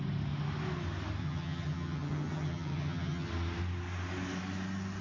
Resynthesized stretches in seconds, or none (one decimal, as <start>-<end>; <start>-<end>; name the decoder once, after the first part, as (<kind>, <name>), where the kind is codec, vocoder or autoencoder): 1.2-3.3 (vocoder, HiFi-GAN)